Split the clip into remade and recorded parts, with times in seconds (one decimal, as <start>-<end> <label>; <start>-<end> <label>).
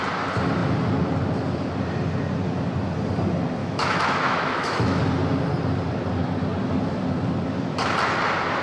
0.0-3.6 recorded; 3.6-5.0 remade; 5.0-8.6 recorded